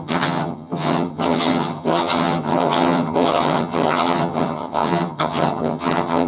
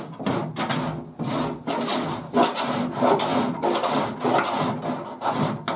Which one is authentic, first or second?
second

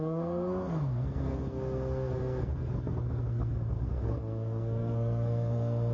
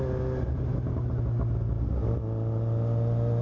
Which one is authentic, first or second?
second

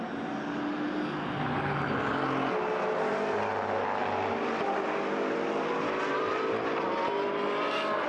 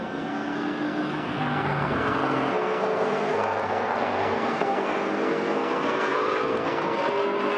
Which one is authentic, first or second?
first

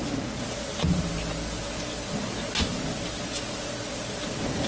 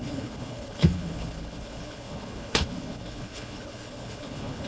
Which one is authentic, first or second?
first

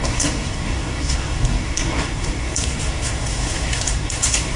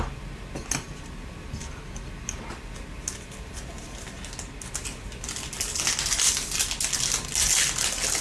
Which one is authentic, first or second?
second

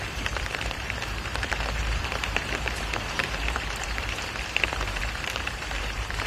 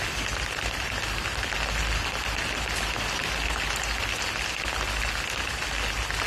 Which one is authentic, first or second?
second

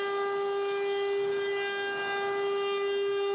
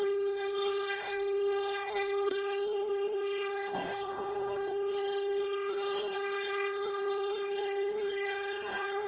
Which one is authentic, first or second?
first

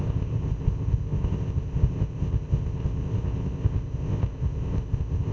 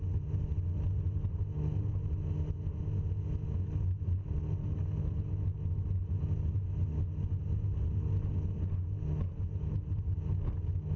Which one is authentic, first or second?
second